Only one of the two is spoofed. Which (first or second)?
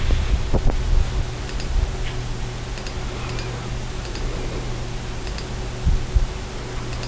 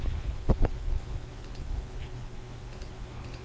second